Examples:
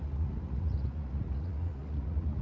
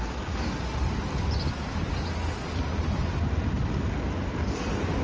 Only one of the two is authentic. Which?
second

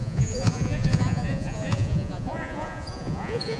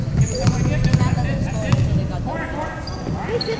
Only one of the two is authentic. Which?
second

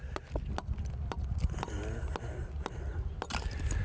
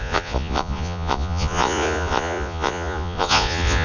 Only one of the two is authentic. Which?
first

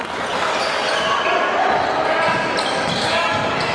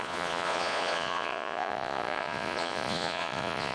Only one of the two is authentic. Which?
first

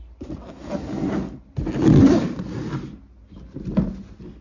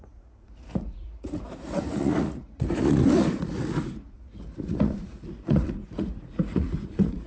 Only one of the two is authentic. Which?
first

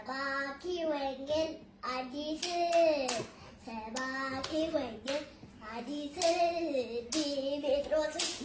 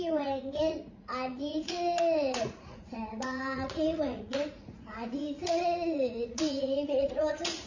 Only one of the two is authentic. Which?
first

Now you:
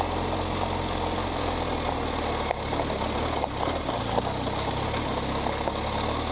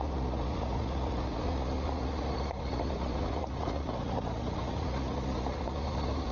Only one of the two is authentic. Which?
first